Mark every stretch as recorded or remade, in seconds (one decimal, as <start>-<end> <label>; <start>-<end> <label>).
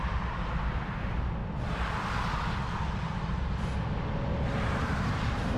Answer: 0.0-1.4 remade; 1.4-4.7 recorded; 4.7-5.6 remade